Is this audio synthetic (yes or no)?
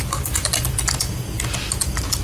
no